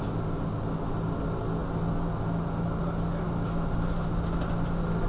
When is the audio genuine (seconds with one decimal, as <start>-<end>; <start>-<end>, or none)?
0.0-5.1